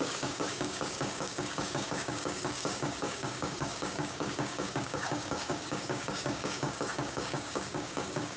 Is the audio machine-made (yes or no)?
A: yes